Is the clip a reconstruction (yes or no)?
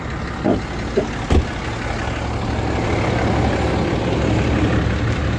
no